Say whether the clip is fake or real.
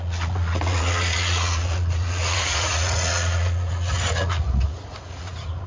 fake